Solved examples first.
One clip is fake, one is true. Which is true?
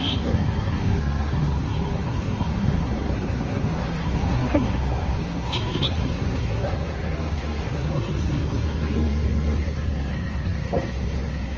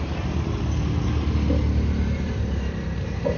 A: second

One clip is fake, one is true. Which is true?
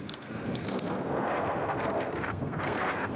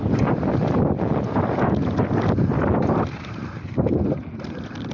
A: second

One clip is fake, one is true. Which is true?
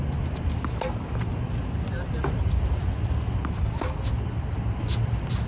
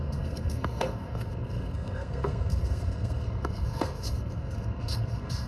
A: first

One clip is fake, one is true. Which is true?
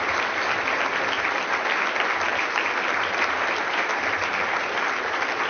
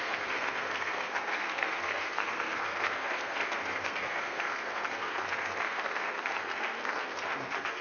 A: first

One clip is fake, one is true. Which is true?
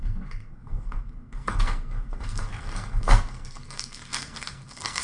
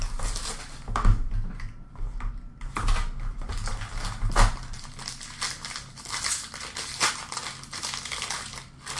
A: second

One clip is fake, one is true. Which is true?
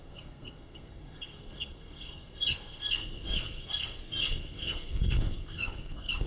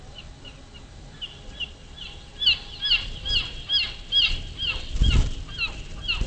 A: second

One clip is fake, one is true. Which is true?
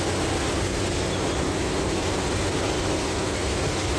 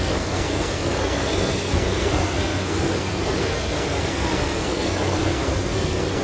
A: first